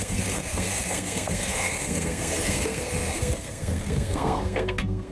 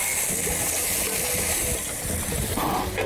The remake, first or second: first